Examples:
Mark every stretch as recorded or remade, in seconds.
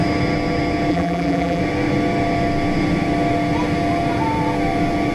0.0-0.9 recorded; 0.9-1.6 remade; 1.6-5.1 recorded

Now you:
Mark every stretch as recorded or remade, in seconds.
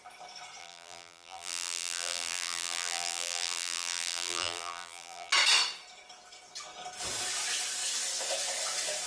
0.0-0.6 recorded; 0.6-5.3 remade; 5.3-9.1 recorded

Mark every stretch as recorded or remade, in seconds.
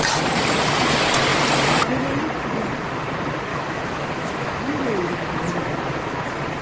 0.0-3.5 recorded; 3.5-5.4 remade; 5.4-6.6 recorded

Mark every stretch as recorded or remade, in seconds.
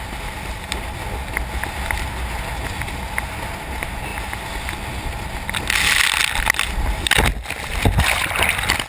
0.0-8.9 recorded